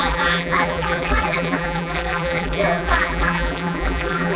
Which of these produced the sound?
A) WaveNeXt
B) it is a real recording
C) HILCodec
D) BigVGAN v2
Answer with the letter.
D